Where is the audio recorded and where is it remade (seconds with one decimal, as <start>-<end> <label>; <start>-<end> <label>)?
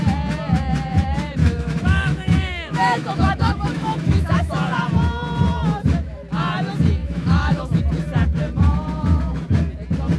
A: 0.0-1.4 recorded; 1.4-4.8 remade; 4.8-7.0 recorded; 7.0-7.8 remade; 7.8-10.2 recorded